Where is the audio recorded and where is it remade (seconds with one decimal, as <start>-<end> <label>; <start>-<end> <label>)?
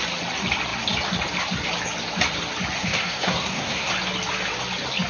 0.0-2.8 recorded; 2.8-3.9 remade; 3.9-5.1 recorded